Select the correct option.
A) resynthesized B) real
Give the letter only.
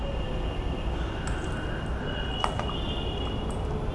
B